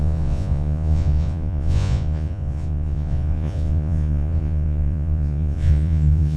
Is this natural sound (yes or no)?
no